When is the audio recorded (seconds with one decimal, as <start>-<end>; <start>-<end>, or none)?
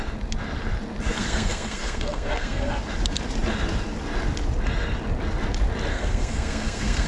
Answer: 0.0-1.1; 2.8-5.9